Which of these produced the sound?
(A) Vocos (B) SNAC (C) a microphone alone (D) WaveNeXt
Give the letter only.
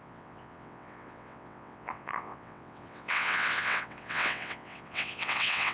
D